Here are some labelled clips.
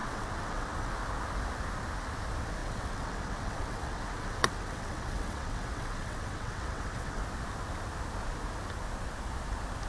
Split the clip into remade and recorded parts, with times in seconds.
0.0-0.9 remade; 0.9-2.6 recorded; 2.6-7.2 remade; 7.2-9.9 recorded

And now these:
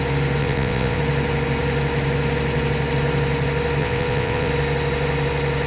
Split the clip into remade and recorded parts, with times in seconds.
0.0-0.4 recorded; 0.4-1.0 remade; 1.0-3.8 recorded; 3.8-4.5 remade; 4.5-5.7 recorded